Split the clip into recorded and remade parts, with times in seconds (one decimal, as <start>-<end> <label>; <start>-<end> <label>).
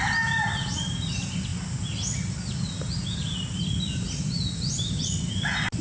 0.0-5.8 recorded